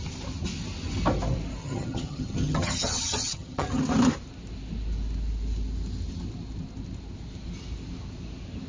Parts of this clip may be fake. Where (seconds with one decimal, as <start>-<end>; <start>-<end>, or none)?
1.6-3.8